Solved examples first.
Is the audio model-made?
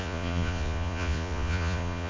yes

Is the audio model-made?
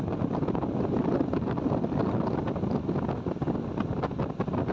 no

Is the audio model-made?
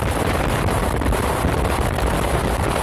yes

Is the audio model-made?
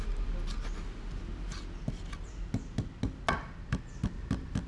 no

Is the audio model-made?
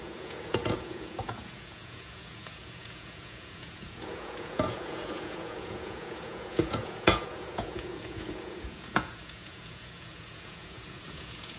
yes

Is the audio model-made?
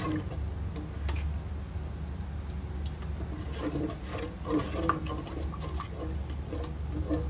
no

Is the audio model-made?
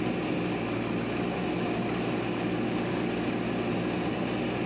no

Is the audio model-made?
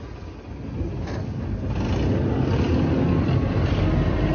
no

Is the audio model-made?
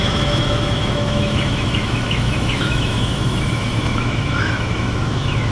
yes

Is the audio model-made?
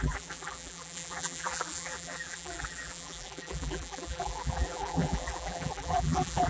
yes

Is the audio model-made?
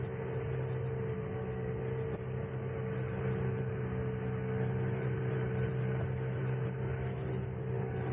no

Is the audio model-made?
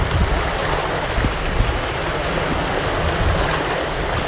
no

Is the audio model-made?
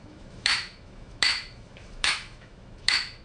yes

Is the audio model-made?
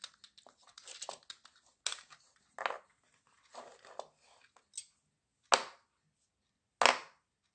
no